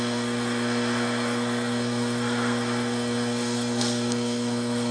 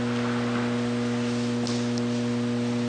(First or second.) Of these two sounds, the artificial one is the first